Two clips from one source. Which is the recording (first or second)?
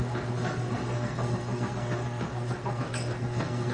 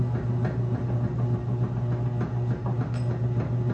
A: second